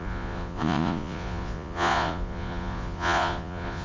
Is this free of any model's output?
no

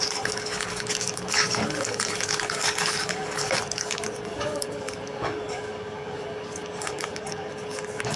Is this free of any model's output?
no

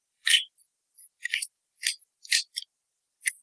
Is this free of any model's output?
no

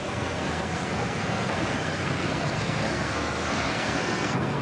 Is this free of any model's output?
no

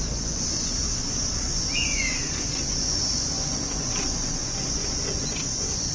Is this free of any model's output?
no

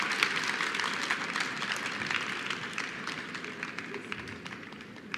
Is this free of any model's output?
yes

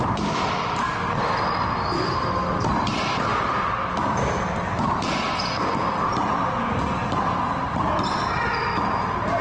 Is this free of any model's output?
yes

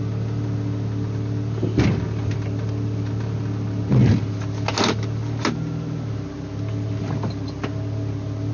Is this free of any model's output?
yes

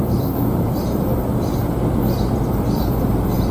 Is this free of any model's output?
no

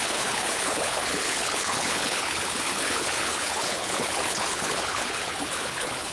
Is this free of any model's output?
no